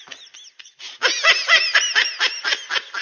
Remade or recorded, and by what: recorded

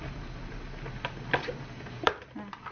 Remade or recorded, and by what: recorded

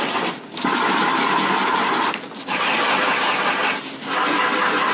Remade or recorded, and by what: recorded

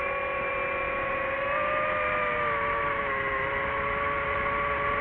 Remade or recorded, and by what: recorded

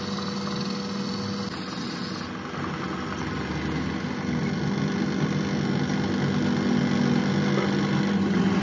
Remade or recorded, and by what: recorded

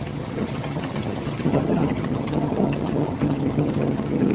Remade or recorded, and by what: remade, vocoder, HiFi-GAN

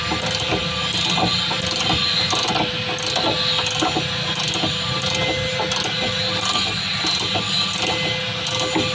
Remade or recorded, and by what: recorded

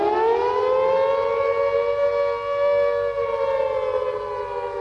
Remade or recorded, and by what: recorded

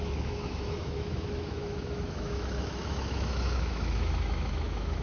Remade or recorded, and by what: remade, autoencoder, DAC-VAE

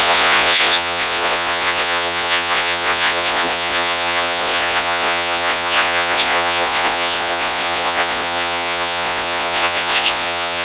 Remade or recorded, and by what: remade, vocoder, Vocos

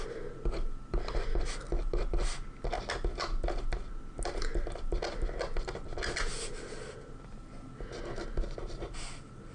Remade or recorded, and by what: recorded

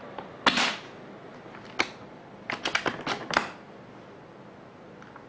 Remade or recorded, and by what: recorded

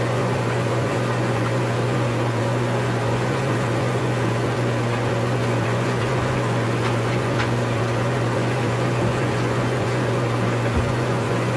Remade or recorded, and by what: remade, vocoder, Vocos